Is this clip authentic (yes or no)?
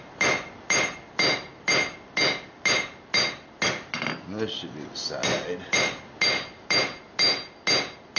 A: yes